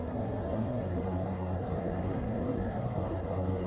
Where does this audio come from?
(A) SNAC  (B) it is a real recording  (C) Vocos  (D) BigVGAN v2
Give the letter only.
A